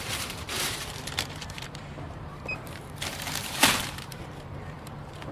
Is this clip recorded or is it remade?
remade